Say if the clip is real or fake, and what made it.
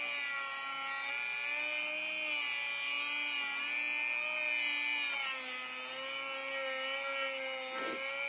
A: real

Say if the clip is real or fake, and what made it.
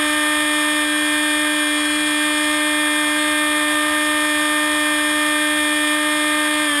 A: real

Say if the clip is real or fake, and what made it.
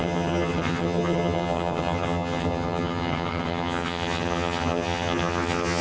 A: fake, vocoder, HiFi-GAN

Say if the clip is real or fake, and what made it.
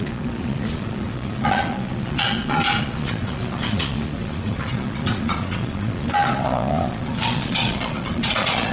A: fake, vocoder, Vocos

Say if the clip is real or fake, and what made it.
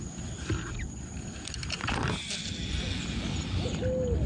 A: real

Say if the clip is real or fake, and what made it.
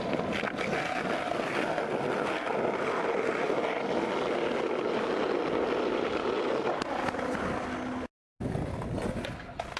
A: real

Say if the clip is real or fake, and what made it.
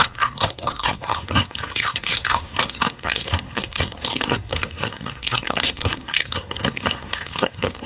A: fake, codec, SNAC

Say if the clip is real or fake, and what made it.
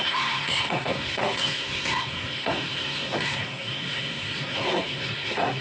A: fake, codec, SNAC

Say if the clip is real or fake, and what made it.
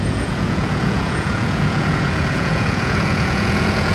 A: fake, vocoder, Vocos